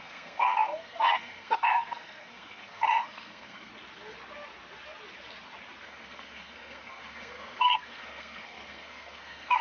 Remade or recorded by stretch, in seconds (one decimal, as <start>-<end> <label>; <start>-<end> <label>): 0.0-3.7 remade; 3.7-5.8 recorded; 5.8-9.6 remade